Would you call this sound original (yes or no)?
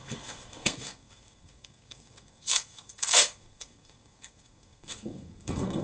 no